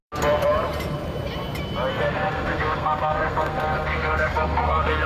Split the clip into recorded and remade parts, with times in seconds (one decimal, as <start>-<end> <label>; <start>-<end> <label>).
0.0-1.9 recorded; 1.9-5.1 remade